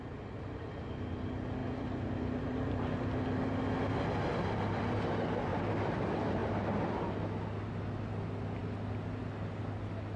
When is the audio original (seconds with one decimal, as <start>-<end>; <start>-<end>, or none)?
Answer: 0.0-5.5; 6.0-10.2